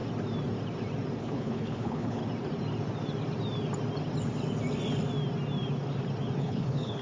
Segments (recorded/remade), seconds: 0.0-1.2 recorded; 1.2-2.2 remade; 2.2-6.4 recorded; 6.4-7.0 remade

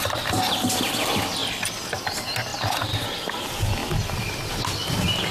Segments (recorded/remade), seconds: 0.0-1.4 recorded; 1.4-2.0 remade; 2.0-5.3 recorded

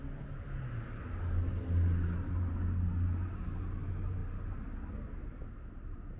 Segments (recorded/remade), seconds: 0.0-6.2 recorded

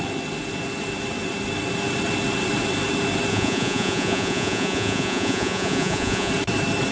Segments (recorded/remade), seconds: 0.0-3.3 recorded; 3.3-6.3 remade; 6.3-6.9 recorded

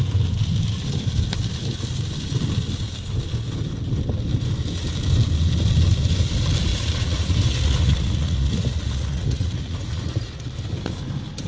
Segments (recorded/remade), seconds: 0.0-6.7 recorded; 6.7-10.4 remade; 10.4-11.5 recorded

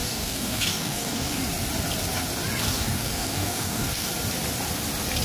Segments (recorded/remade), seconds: 0.0-1.4 remade; 1.4-2.7 recorded; 2.7-4.1 remade; 4.1-5.2 recorded

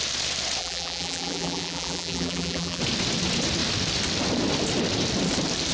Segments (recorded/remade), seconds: 0.0-0.6 recorded; 0.6-2.8 remade; 2.8-5.7 recorded